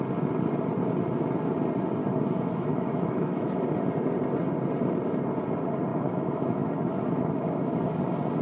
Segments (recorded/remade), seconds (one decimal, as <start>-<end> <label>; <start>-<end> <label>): 0.0-2.0 recorded; 2.0-3.6 remade; 3.6-5.9 recorded; 5.9-8.0 remade; 8.0-8.4 recorded